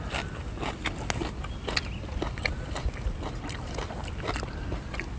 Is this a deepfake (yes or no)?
no